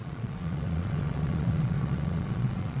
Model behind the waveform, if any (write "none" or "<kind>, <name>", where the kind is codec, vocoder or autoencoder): vocoder, Vocos